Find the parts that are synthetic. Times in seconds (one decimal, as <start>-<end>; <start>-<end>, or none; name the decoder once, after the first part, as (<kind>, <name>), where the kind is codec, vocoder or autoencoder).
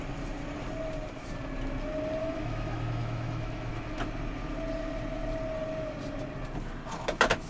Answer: 2.2-4.0 (autoencoder, DAC-VAE)